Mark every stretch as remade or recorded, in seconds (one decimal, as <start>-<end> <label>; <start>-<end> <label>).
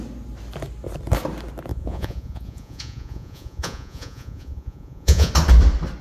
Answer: 0.0-1.7 recorded; 1.7-5.3 remade; 5.3-6.0 recorded